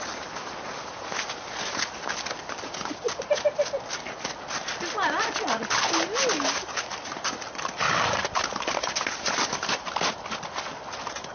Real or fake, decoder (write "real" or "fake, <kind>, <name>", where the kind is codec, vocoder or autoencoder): real